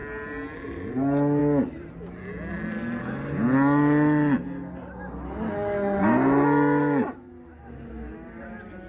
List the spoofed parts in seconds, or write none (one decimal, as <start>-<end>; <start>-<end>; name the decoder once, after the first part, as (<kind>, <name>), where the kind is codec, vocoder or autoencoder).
none